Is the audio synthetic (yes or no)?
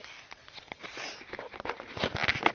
no